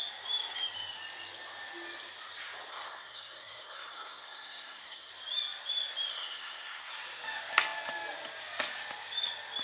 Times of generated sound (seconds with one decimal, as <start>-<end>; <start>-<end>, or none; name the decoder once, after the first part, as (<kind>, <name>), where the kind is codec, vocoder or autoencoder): 2.7-5.1 (codec, SNAC); 6.1-6.9